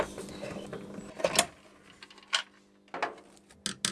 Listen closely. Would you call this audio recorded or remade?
recorded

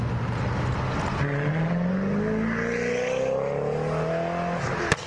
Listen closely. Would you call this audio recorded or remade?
recorded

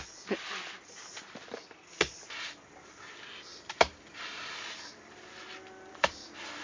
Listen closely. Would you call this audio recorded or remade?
recorded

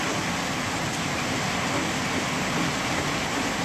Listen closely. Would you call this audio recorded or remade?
recorded